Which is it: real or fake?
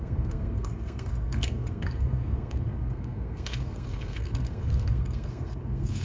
fake